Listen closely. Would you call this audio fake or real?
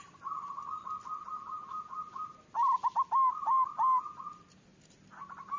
real